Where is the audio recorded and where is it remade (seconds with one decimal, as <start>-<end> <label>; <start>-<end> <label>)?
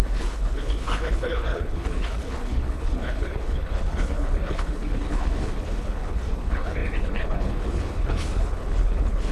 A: 0.0-9.3 remade